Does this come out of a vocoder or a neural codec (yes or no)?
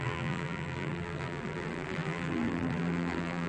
yes